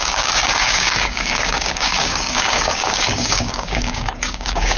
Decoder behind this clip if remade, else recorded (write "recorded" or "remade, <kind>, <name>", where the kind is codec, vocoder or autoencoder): remade, codec, DAC